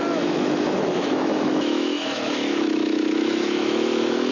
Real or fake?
fake